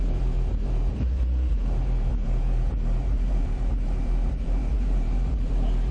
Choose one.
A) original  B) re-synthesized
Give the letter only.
B